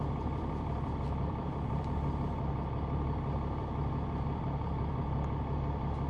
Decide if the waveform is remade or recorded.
remade